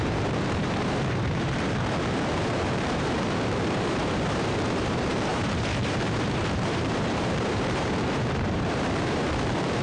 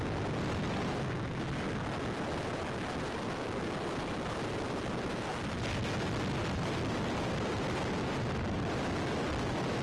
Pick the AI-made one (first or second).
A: first